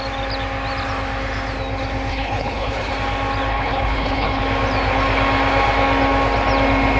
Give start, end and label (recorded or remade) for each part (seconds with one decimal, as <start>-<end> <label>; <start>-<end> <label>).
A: 0.0-2.1 recorded; 2.1-2.9 remade; 2.9-3.5 recorded; 3.5-4.4 remade; 4.4-7.0 recorded